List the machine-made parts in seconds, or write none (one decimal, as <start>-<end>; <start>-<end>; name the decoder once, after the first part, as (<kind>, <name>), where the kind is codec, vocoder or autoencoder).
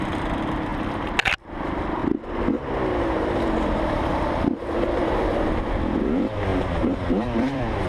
0.0-0.7 (vocoder, BigVGAN v2); 1.3-2.0; 3.5-7.9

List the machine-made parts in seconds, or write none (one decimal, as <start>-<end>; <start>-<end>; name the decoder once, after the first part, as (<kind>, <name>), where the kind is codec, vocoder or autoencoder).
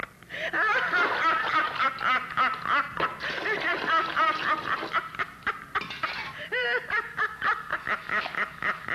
3.7-4.4 (vocoder, BigVGAN v2); 6.2-7.2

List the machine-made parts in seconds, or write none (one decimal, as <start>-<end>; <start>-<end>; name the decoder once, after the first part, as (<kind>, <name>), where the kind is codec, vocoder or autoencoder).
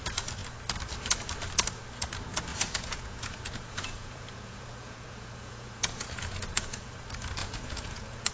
2.5-6.9 (vocoder, Vocos); 7.4-8.3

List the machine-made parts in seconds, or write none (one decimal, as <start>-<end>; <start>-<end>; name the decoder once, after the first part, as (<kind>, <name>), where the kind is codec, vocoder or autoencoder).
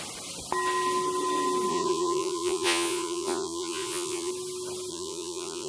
1.7-4.3 (vocoder, Vocos); 4.9-5.7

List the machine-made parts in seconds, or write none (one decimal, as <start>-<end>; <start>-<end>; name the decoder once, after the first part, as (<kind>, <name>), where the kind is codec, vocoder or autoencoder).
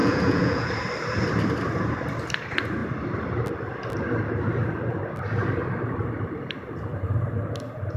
0.0-0.7 (vocoder, Vocos)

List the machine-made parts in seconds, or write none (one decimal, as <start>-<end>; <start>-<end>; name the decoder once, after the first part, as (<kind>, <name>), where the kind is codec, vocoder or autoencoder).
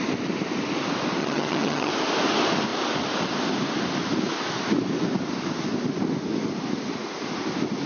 1.2-1.9 (vocoder, HiFi-GAN)